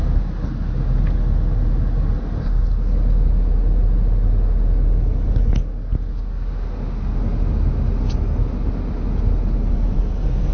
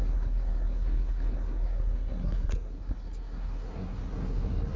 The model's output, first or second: second